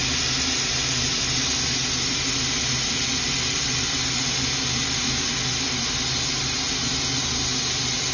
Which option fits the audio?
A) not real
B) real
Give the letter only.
B